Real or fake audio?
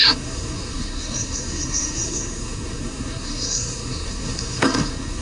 fake